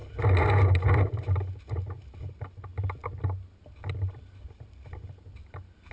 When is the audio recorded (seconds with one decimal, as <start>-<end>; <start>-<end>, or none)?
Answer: 0.0-5.9